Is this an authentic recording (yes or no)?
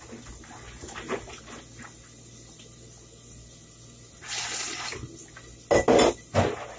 yes